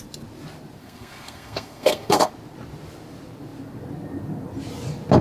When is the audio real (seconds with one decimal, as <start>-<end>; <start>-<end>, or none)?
0.0-0.8; 2.3-5.2